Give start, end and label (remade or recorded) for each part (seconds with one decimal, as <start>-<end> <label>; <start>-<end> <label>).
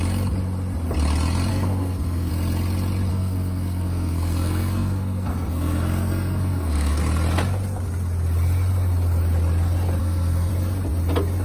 0.0-1.5 recorded; 1.5-2.3 remade; 2.3-3.1 recorded; 3.1-7.0 remade; 7.0-10.0 recorded; 10.0-10.5 remade; 10.5-11.4 recorded